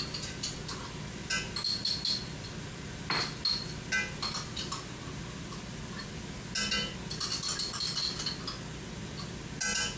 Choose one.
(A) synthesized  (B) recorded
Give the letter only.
B